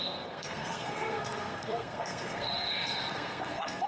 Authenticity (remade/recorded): remade